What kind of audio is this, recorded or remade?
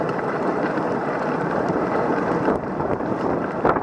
remade